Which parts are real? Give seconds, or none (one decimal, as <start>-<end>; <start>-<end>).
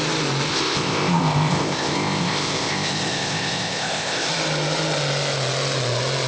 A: 0.0-0.5; 4.3-6.3